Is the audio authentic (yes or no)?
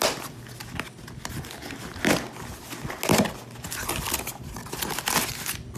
yes